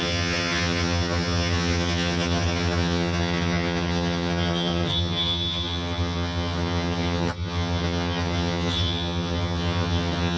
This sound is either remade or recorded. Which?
remade